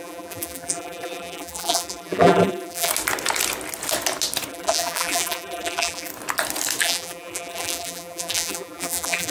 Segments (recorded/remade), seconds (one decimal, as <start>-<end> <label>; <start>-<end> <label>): 0.0-2.9 remade; 2.9-4.5 recorded; 4.5-6.1 remade; 6.1-6.8 recorded; 6.8-9.3 remade